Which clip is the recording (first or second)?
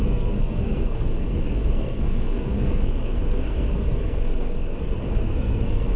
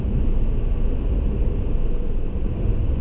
second